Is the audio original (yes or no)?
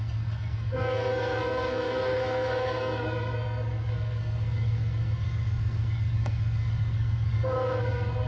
no